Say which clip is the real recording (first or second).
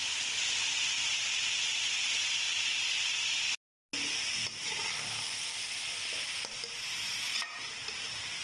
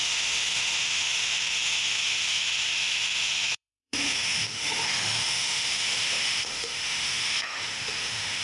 first